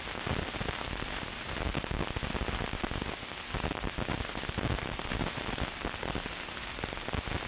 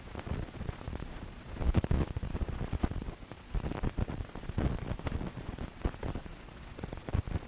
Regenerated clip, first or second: second